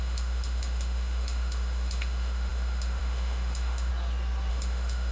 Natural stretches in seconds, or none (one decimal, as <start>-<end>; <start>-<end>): 3.9-4.5